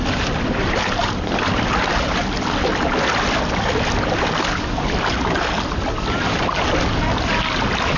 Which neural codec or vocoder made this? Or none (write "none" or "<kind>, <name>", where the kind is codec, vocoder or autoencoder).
none